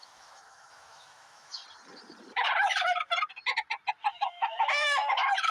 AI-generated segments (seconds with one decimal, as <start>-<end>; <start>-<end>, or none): 0.0-1.6; 4.1-5.5